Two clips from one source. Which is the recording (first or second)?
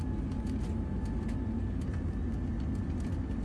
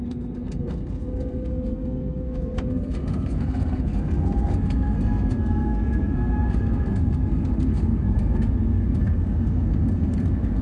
first